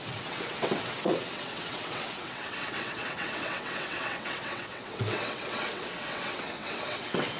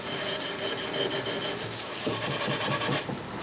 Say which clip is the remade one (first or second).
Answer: first